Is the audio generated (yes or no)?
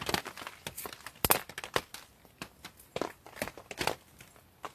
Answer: no